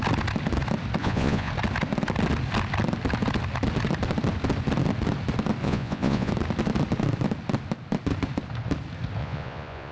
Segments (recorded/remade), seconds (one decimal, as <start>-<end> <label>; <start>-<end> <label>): 0.0-1.0 recorded; 1.0-1.5 remade; 1.5-5.6 recorded; 5.6-6.3 remade; 6.3-9.2 recorded; 9.2-9.9 remade